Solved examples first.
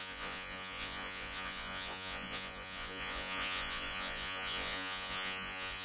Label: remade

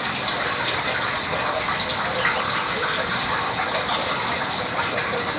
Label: recorded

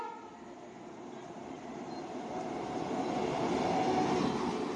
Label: recorded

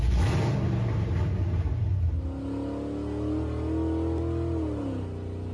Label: recorded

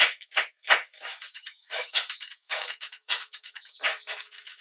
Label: remade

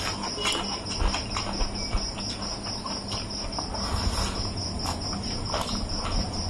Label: recorded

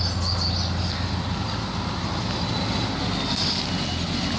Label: recorded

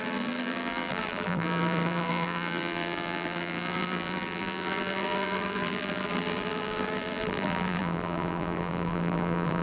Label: remade